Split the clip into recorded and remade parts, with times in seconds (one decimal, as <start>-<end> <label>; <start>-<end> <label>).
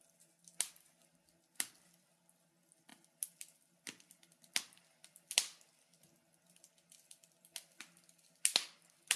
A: 0.0-9.2 recorded